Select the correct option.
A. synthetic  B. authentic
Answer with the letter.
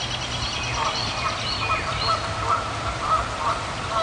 B